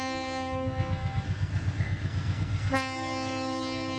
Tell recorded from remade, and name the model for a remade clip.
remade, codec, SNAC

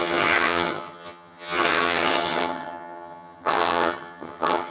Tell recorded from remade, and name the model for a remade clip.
remade, vocoder, HiFi-GAN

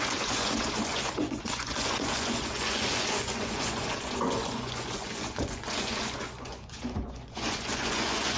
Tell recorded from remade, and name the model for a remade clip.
remade, vocoder, Vocos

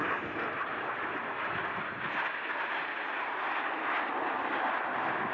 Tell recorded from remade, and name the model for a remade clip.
recorded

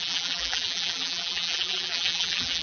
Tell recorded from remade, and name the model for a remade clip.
remade, vocoder, BigVGAN v2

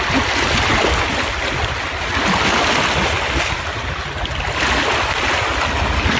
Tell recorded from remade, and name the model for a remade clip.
recorded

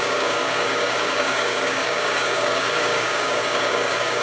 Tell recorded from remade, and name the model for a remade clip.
remade, codec, DAC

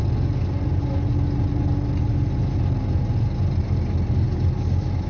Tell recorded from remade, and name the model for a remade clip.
recorded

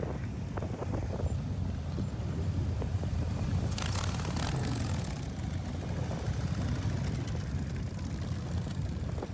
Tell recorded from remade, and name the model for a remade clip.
recorded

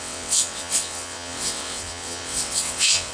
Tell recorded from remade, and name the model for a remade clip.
remade, vocoder, WaveNeXt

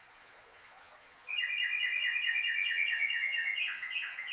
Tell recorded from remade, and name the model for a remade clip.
remade, vocoder, Vocos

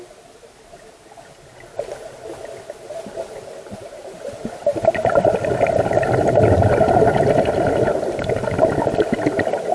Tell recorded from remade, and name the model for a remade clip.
recorded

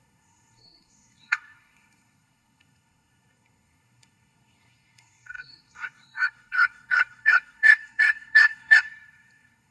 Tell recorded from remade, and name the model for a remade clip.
remade, codec, SNAC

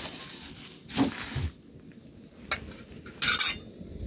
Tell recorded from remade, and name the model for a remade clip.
recorded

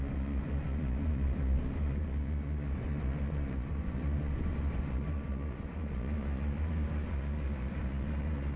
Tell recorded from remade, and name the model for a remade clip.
remade, vocoder, Vocos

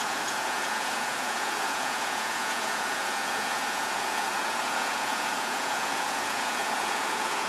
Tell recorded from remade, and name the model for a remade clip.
remade, vocoder, Vocos